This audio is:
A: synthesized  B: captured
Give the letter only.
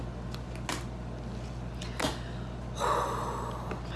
B